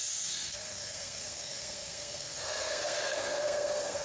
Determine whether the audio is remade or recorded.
remade